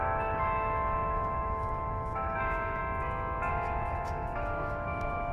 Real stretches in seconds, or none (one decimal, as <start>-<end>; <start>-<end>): 2.8-3.5